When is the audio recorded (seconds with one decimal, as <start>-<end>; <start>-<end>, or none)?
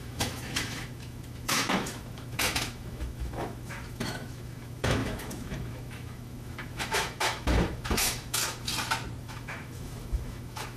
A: 8.7-9.2